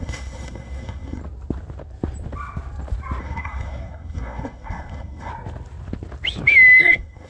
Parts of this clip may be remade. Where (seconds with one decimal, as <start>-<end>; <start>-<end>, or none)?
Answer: 0.0-1.2; 3.2-5.3; 6.8-7.3